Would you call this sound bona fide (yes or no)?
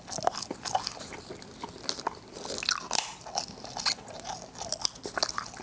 yes